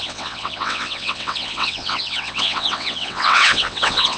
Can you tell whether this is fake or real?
fake